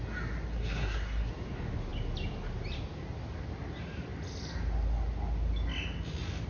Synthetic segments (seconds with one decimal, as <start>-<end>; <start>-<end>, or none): 0.5-1.3